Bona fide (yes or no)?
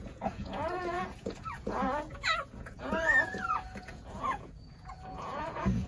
no